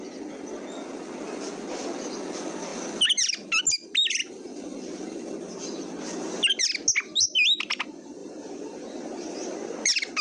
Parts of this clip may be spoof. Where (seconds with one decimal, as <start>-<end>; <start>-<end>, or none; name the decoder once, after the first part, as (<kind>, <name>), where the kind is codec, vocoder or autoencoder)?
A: 8.2-10.2 (vocoder, BigVGAN v2)